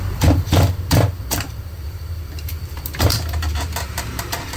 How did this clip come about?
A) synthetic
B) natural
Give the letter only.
A